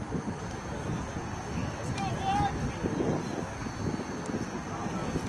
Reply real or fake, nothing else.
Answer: real